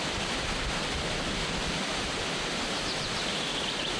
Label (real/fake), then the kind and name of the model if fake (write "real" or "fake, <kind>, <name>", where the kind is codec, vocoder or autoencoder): real